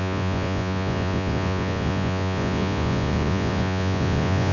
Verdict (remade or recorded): remade